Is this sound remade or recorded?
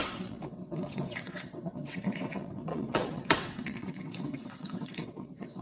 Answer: remade